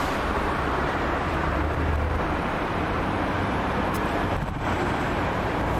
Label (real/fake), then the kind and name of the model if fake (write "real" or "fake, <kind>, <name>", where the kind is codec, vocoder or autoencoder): fake, vocoder, BigVGAN v2